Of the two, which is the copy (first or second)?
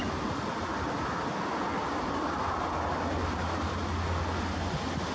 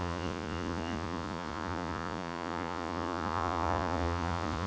second